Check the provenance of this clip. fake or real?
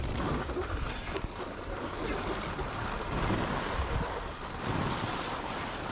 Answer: real